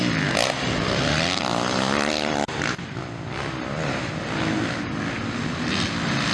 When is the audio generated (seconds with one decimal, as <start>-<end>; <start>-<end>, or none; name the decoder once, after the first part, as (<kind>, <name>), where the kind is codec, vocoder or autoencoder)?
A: none